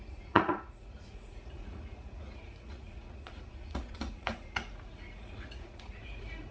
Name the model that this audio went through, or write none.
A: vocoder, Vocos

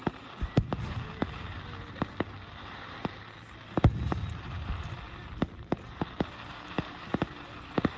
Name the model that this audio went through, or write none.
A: vocoder, BigVGAN v2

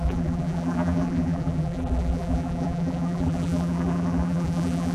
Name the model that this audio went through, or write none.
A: vocoder, BigVGAN v2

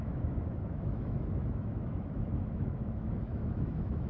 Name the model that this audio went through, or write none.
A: autoencoder, DAC-VAE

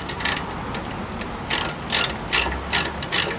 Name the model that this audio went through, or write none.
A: none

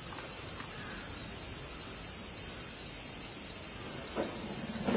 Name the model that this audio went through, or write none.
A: none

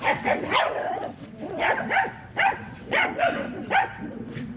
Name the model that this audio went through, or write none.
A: vocoder, WaveNeXt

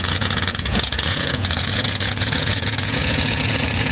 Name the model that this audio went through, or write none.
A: vocoder, Vocos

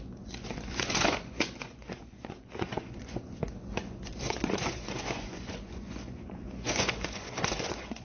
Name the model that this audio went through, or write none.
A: vocoder, Vocos